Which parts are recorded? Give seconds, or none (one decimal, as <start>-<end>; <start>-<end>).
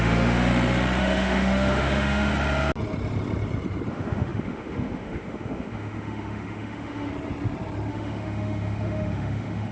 0.5-1.0; 2.3-3.9; 7.1-7.9